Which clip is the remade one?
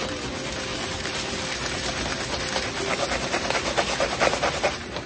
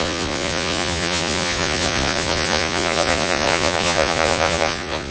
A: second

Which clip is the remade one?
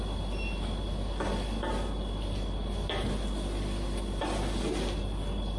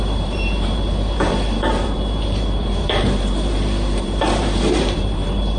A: second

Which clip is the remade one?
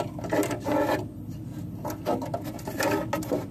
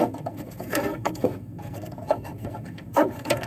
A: second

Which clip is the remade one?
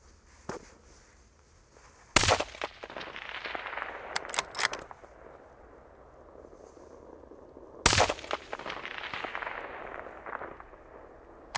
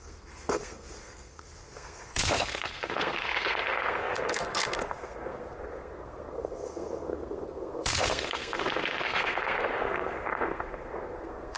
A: second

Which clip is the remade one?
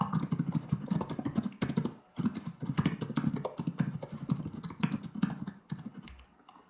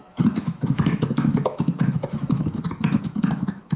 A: second